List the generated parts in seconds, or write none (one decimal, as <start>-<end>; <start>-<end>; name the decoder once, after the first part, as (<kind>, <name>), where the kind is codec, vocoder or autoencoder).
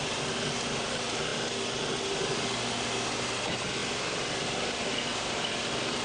5.1-5.6 (vocoder, BigVGAN v2)